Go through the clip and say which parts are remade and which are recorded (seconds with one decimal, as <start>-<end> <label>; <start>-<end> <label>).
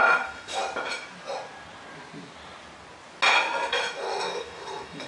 0.0-0.6 remade; 0.6-3.7 recorded; 3.7-5.1 remade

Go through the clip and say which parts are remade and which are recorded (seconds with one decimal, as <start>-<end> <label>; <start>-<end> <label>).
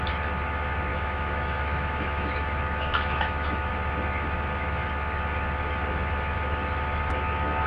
0.0-0.9 recorded; 0.9-3.7 remade; 3.7-7.7 recorded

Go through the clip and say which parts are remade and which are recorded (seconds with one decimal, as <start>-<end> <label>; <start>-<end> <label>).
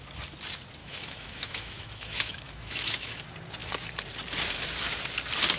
0.0-0.8 recorded; 0.8-3.2 remade; 3.2-5.6 recorded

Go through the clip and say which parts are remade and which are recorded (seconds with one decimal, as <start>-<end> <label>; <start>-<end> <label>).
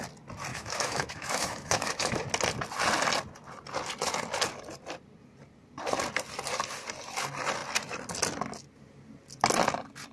0.0-0.5 recorded; 0.5-2.2 remade; 2.2-10.1 recorded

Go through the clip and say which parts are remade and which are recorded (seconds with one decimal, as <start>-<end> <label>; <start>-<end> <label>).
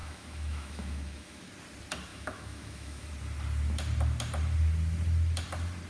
0.0-1.5 remade; 1.5-2.1 recorded; 2.1-3.1 remade; 3.1-5.9 recorded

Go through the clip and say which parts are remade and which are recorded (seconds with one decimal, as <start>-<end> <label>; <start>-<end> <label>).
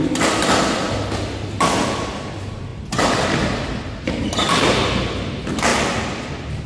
0.0-6.7 recorded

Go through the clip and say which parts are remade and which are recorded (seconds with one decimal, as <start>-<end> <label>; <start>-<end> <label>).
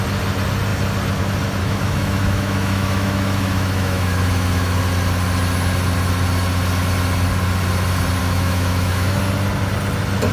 0.0-1.6 recorded; 1.6-4.8 remade; 4.8-8.2 recorded; 8.2-9.2 remade; 9.2-10.3 recorded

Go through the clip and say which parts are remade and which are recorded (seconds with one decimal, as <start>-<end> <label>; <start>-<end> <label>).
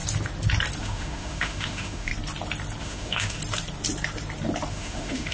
0.0-0.8 recorded; 0.8-2.1 remade; 2.1-2.8 recorded; 2.8-3.4 remade; 3.4-4.7 recorded; 4.7-5.3 remade